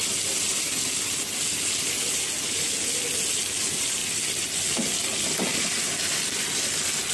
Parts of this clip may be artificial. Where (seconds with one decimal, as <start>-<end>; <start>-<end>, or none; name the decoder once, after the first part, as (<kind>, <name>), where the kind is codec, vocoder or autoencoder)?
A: 4.0-4.5 (vocoder, BigVGAN v2)